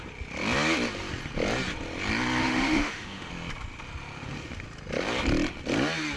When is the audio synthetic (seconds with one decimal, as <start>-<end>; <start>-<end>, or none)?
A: 2.4-3.3